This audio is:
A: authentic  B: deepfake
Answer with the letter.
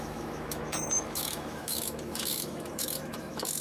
B